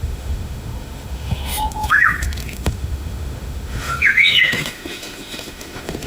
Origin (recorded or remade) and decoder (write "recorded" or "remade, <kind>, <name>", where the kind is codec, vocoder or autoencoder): remade, autoencoder, DAC-VAE